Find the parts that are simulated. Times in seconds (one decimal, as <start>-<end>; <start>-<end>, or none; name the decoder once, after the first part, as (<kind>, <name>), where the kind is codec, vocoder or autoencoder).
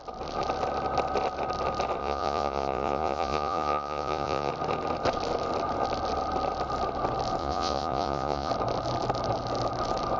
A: 2.0-4.5 (vocoder, Vocos); 7.4-8.5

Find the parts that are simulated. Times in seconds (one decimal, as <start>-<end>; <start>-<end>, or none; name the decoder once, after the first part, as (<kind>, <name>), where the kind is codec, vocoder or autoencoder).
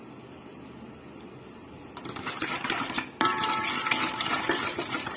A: none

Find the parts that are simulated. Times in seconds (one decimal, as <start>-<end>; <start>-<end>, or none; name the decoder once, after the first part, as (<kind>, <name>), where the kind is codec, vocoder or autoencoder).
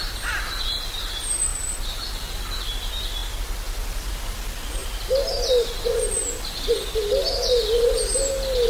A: none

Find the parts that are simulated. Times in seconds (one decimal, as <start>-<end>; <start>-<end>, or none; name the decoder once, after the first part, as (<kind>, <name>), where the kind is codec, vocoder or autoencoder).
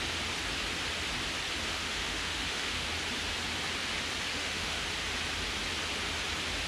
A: 1.7-2.9 (autoencoder, DAC-VAE); 4.3-4.8